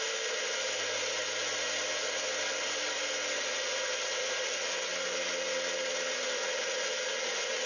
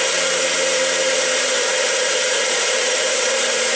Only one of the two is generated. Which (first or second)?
second